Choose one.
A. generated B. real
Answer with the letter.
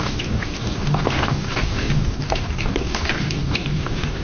A